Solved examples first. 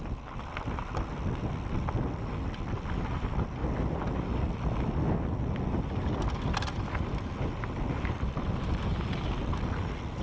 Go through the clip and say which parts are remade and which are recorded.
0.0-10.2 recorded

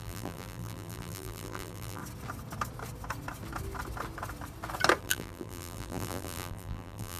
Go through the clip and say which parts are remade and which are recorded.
0.0-2.0 remade; 2.0-5.0 recorded; 5.0-7.2 remade

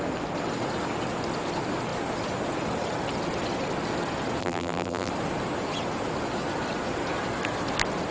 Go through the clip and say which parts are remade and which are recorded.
0.0-4.4 recorded; 4.4-5.1 remade; 5.1-8.1 recorded